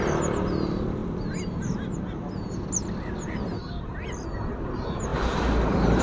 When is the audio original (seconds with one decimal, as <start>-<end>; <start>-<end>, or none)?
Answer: 0.0-6.0